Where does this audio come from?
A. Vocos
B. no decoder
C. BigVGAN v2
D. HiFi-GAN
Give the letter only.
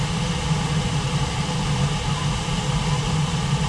B